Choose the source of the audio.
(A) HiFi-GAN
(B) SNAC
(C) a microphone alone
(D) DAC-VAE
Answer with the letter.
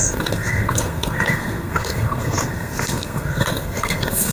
B